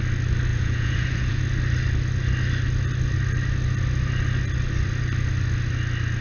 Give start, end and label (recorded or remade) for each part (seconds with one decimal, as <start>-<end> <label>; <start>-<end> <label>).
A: 0.0-0.5 recorded; 0.5-1.4 remade; 1.4-6.2 recorded